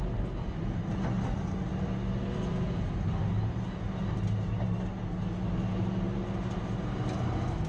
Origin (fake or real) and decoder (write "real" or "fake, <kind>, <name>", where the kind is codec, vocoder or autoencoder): real